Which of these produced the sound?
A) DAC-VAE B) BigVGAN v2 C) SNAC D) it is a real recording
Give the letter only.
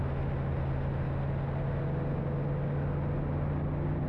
D